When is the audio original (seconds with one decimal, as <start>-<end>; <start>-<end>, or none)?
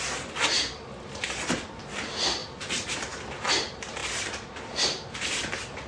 0.0-5.9